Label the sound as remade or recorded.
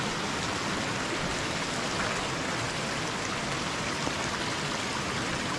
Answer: recorded